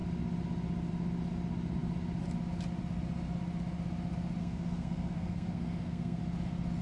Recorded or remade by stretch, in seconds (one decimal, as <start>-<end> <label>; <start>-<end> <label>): 0.0-4.4 recorded; 4.4-6.2 remade; 6.2-6.8 recorded